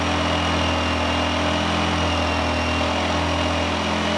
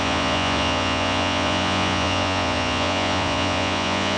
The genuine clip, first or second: first